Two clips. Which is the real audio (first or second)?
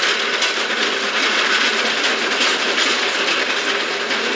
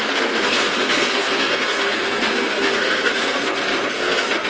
first